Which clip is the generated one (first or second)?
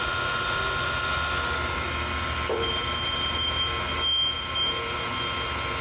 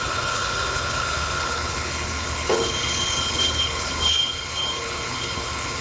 second